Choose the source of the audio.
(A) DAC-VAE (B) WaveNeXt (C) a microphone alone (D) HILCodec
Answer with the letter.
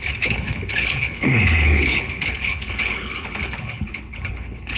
D